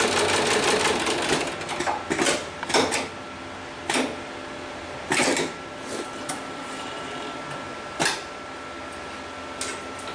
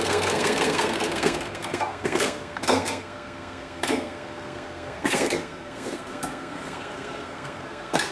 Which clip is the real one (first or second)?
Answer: first